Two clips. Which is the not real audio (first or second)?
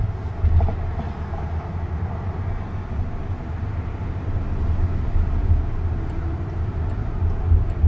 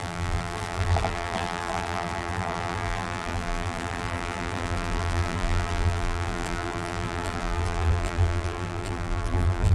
second